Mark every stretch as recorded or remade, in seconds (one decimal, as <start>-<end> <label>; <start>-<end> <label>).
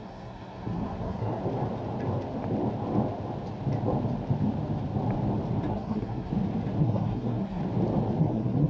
0.0-1.4 remade; 1.4-5.7 recorded; 5.7-6.3 remade; 6.3-6.8 recorded; 6.8-7.6 remade; 7.6-8.2 recorded; 8.2-8.7 remade